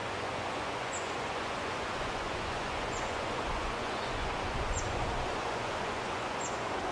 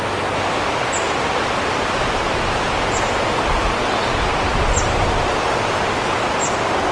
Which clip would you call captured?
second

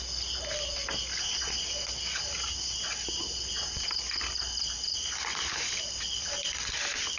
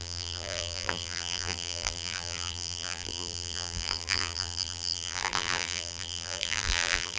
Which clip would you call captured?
first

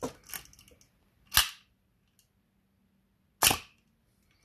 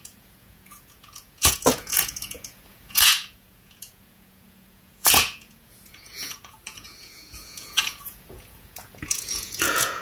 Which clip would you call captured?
first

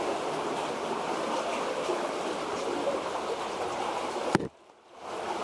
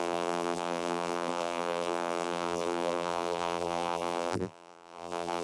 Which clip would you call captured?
first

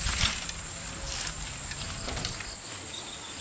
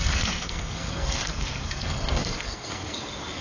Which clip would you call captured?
first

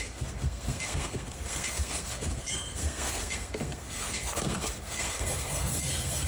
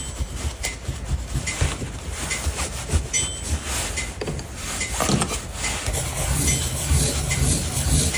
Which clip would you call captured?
second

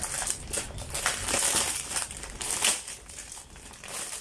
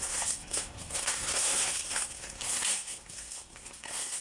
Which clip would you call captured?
first